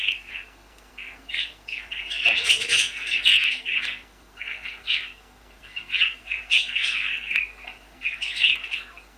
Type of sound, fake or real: fake